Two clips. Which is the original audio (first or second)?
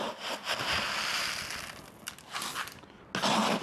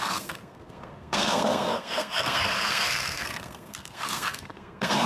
first